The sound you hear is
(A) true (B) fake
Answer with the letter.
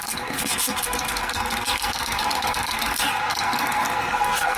B